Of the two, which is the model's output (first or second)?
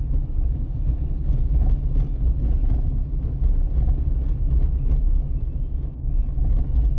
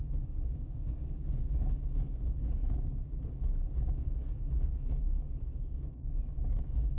second